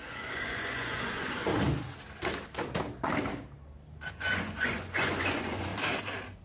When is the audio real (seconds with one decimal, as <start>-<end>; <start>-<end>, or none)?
1.5-4.1; 5.7-6.4